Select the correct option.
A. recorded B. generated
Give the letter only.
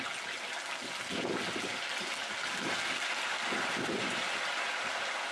A